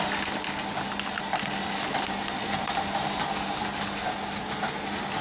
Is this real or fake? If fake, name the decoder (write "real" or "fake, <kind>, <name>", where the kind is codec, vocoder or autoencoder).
real